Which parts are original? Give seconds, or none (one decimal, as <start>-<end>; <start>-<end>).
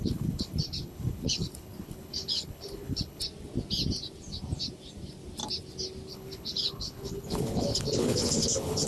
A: 3.2-6.1